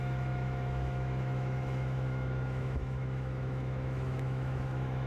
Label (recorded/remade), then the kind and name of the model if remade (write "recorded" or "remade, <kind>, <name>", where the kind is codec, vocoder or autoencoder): remade, autoencoder, DAC-VAE